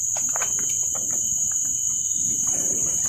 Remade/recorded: remade